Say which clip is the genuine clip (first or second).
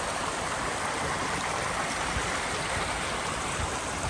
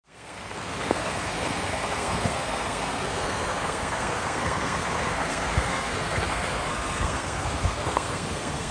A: first